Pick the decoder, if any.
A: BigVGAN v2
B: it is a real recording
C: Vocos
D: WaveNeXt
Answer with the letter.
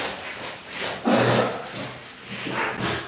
B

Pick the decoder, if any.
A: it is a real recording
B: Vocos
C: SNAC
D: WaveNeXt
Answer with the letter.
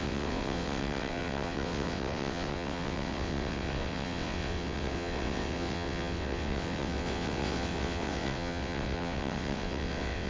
D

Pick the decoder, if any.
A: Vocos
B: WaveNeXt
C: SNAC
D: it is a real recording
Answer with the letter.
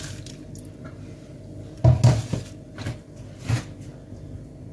D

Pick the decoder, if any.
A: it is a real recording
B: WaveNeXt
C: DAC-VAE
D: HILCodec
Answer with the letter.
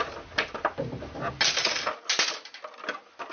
A